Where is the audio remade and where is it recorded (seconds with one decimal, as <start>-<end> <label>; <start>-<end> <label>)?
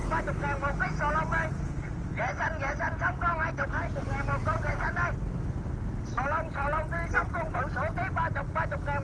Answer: 0.0-9.0 recorded